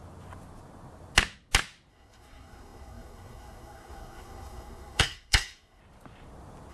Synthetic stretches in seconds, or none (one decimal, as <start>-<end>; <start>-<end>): 1.9-5.8